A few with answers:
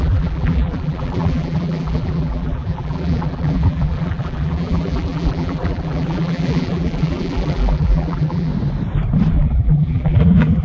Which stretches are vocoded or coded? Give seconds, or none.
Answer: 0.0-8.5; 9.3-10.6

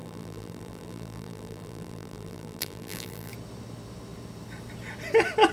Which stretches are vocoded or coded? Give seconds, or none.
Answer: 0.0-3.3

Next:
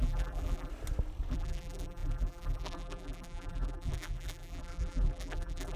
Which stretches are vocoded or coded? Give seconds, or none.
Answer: 0.0-0.7; 1.3-5.8